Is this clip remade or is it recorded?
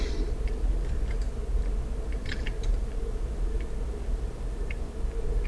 recorded